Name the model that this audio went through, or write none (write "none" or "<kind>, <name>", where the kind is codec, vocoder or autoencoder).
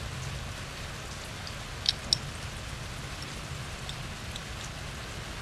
none